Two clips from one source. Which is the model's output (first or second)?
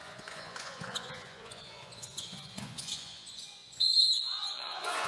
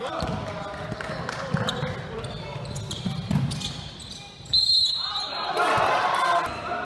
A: first